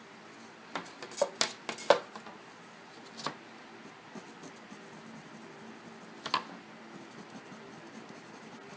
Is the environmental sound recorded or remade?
recorded